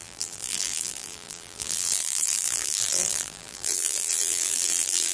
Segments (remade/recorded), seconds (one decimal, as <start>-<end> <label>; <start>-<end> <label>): 0.0-5.1 remade